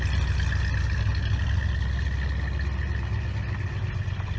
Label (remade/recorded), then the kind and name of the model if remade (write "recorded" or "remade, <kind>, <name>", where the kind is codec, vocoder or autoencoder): recorded